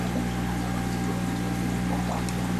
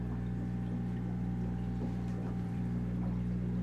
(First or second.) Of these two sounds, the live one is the first